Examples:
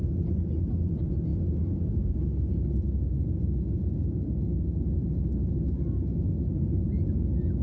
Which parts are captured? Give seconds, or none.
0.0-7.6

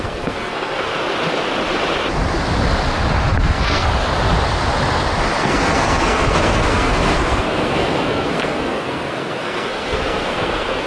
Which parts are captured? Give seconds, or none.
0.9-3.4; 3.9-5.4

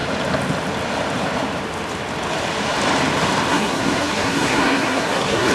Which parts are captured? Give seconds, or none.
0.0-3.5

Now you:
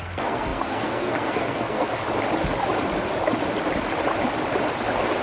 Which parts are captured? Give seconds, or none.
1.9-5.2

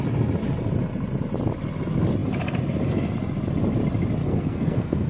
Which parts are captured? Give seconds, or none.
0.0-4.2

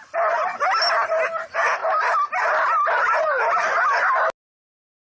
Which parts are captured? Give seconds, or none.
0.0-5.0